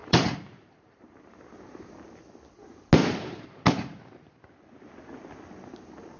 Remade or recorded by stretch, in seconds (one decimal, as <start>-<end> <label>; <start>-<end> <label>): 0.0-1.4 remade; 1.4-3.0 recorded; 3.0-3.6 remade; 3.6-6.2 recorded